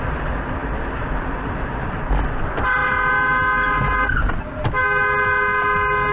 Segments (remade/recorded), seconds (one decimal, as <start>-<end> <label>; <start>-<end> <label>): 0.0-6.1 recorded